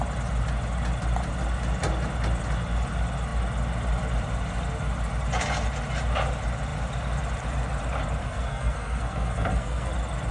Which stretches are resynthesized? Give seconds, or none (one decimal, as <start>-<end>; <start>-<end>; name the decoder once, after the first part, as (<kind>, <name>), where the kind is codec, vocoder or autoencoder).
8.2-9.9 (codec, SNAC)